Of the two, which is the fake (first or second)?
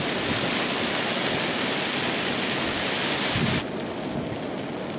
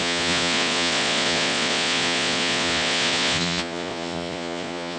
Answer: second